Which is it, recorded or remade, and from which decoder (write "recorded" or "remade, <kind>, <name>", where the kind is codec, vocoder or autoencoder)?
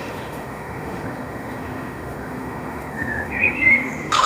remade, autoencoder, DAC-VAE